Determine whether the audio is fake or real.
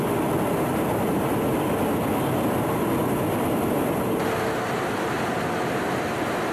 real